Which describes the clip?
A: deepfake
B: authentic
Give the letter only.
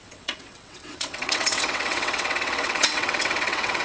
A